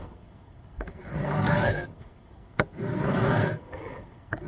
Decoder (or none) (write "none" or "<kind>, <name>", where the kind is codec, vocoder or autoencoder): codec, SNAC